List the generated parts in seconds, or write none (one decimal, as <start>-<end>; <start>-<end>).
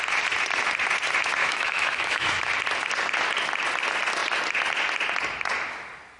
1.4-2.5